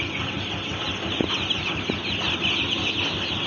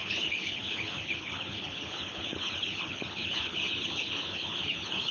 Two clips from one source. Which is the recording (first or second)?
first